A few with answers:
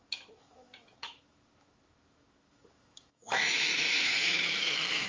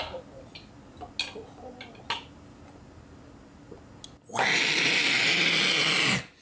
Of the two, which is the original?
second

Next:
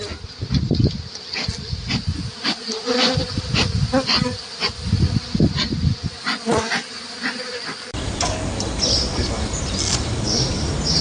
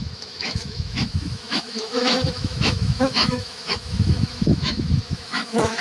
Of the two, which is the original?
first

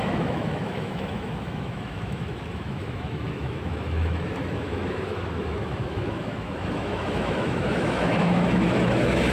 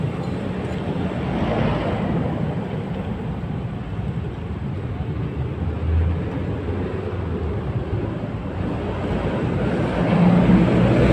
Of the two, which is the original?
second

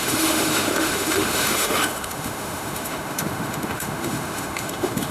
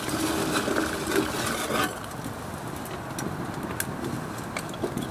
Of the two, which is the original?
second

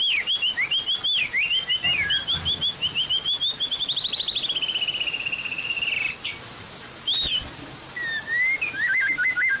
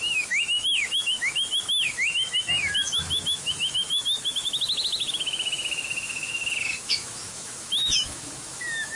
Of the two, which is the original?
first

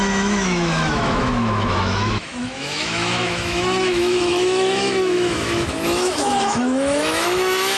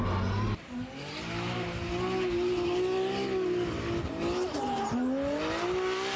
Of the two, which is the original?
second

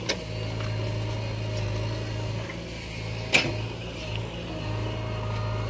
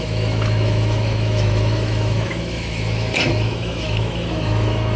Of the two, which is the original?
first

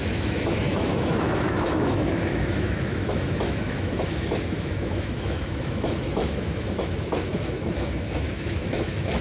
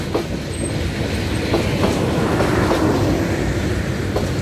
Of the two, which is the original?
second